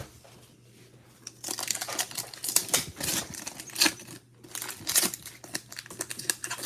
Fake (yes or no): no